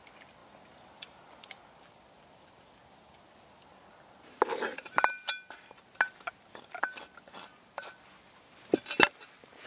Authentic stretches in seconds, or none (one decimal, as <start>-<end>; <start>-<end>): 0.0-0.4; 1.5-9.7